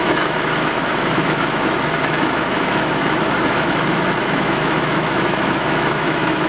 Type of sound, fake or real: fake